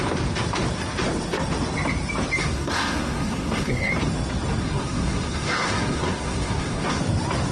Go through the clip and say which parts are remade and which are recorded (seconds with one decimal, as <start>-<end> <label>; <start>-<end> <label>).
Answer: 0.0-2.4 recorded; 2.4-3.9 remade; 3.9-4.6 recorded; 4.6-7.0 remade; 7.0-7.5 recorded